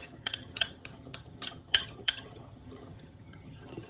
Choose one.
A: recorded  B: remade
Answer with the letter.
B